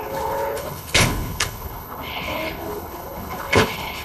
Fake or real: fake